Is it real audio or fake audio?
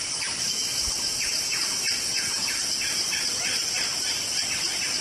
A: real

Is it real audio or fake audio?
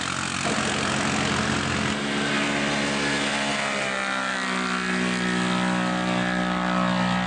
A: real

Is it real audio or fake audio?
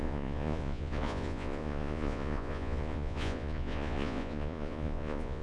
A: fake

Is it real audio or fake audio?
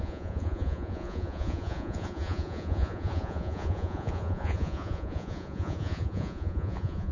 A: fake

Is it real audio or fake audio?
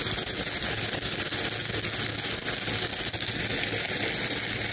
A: real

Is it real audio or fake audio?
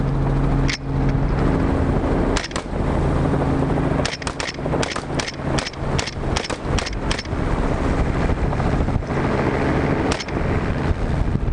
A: real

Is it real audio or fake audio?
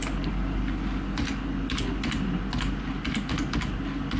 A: real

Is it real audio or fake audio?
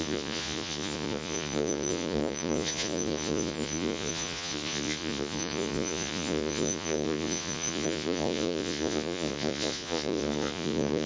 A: fake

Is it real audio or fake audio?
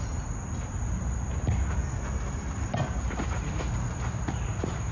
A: real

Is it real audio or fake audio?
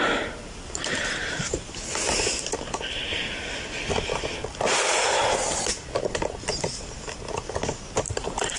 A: real